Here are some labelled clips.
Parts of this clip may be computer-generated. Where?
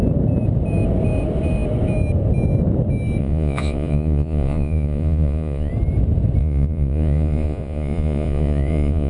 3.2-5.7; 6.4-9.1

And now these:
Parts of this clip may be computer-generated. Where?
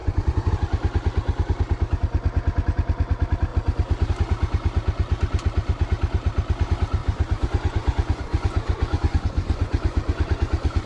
0.0-0.5; 7.0-10.9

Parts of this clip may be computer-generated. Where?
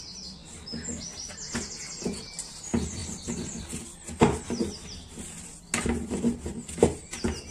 none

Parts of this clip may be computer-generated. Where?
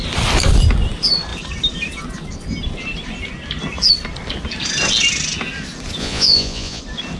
6.0-6.8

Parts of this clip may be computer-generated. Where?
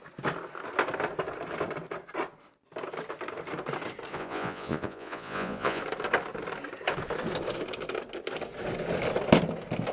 4.1-5.8